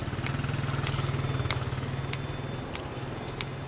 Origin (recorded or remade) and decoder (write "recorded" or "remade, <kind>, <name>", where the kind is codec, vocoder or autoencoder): recorded